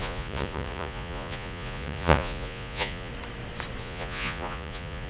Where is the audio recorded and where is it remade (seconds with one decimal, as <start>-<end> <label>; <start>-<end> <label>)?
0.0-3.1 remade; 3.1-3.8 recorded; 3.8-5.1 remade